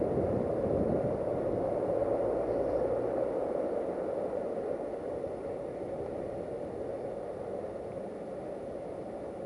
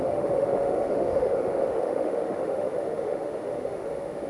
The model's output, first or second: second